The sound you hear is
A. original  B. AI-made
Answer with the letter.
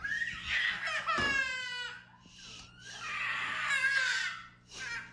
A